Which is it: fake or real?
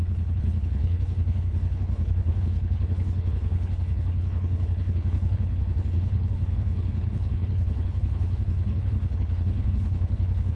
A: fake